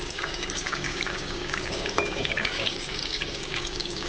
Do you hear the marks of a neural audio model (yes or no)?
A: yes